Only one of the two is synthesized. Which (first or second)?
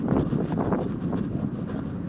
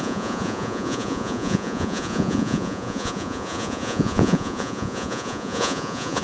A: second